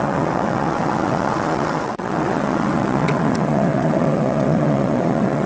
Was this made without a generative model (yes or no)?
no